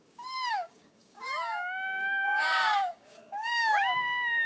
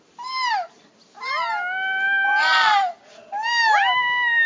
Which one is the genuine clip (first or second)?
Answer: second